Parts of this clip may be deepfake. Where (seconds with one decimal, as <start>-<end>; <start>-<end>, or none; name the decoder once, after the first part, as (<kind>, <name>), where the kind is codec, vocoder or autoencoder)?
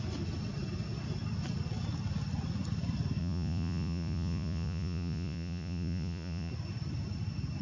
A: 3.2-6.5 (vocoder, Vocos)